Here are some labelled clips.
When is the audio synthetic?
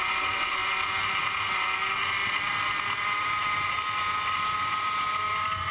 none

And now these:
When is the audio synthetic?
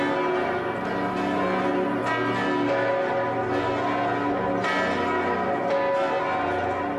none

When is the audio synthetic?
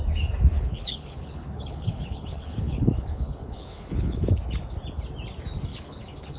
0.5-4.3 (codec, HILCodec); 5.7-6.4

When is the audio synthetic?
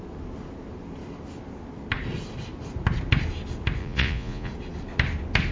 3.8-4.5 (vocoder, Vocos)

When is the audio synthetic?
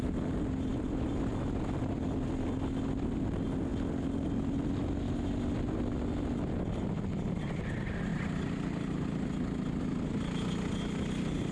0.7-1.3 (vocoder, BigVGAN v2)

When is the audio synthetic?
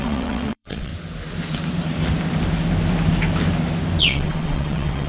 0.0-0.9 (vocoder, WaveNeXt); 4.0-5.1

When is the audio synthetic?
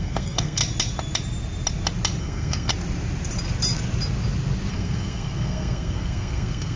0.0-0.6 (codec, SNAC); 2.2-2.7; 4.7-6.8